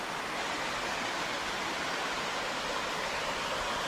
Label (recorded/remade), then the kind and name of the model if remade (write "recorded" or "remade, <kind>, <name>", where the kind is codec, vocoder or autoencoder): recorded